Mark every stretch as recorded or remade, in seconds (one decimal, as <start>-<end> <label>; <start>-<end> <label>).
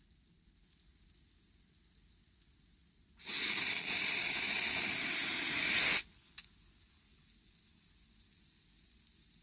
0.0-9.4 recorded